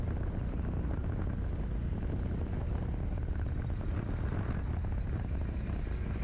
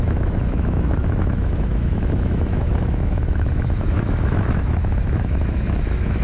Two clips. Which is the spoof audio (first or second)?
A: second